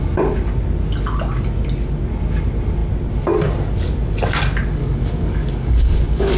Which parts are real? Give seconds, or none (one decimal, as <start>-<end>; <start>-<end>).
0.0-4.8

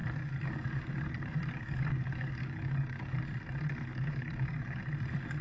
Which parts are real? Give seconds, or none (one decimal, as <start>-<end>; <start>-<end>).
3.2-3.9; 4.8-5.4

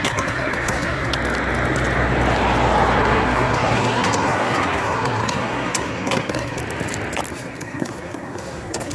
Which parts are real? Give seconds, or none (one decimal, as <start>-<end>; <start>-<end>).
1.1-3.0; 6.6-7.3